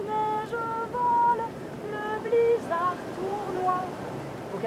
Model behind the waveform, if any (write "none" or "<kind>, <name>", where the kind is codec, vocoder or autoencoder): vocoder, BigVGAN v2